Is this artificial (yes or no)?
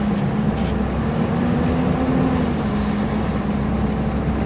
no